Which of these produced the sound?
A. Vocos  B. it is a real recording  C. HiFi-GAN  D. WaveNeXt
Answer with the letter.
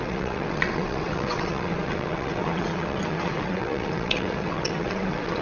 D